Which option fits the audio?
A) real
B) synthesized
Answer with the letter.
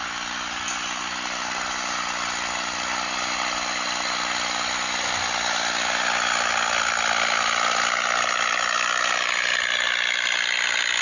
A